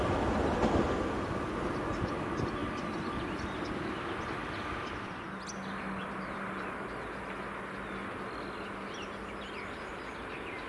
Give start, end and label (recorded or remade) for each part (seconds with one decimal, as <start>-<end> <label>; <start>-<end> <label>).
0.0-2.6 recorded; 2.6-3.1 remade; 3.1-4.4 recorded; 4.4-5.5 remade; 5.5-10.7 recorded